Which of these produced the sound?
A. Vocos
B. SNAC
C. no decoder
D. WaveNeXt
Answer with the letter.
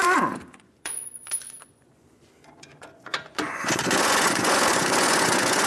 A